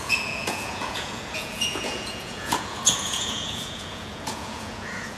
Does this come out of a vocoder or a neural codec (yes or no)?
yes